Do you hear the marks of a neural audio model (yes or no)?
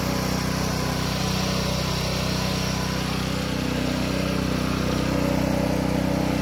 no